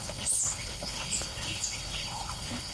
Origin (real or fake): fake